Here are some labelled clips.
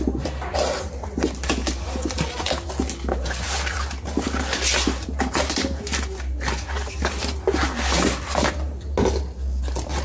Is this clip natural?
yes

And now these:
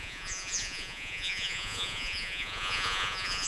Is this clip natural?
no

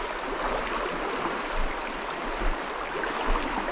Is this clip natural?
yes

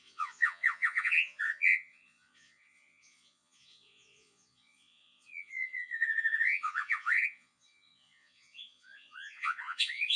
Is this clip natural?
no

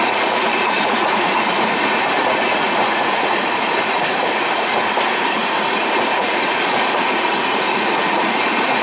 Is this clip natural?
no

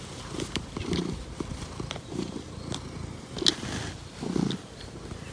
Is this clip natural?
yes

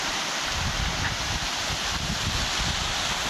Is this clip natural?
yes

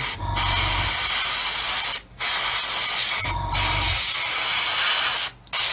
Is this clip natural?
yes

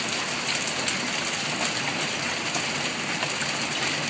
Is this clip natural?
yes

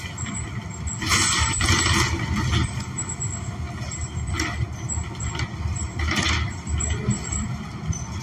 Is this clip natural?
yes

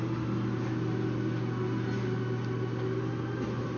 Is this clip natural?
yes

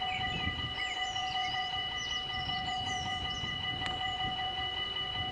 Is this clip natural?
no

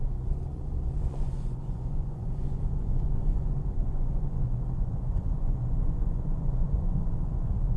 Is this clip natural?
no